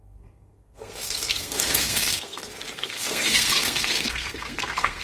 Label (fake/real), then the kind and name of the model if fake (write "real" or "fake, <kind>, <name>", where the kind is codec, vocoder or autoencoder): fake, codec, SNAC